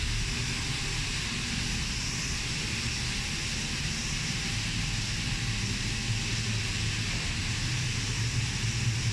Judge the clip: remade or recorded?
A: recorded